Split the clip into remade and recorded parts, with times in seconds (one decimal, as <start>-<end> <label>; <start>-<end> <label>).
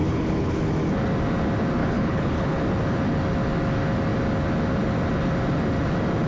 0.0-0.6 remade; 0.6-1.8 recorded; 1.8-2.6 remade; 2.6-6.3 recorded